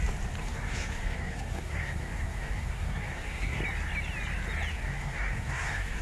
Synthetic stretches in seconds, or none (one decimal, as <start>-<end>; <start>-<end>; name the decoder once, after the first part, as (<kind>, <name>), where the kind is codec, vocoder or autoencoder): 0.4-3.6 (codec, SNAC); 4.7-6.0